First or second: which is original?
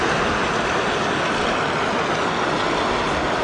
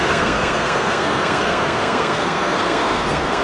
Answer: first